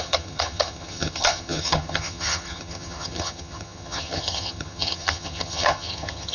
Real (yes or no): no